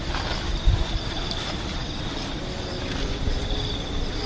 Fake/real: fake